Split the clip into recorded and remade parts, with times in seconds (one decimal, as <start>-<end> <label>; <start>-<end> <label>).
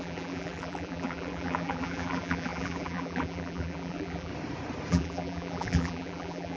0.0-4.3 remade; 4.3-4.9 recorded; 4.9-6.6 remade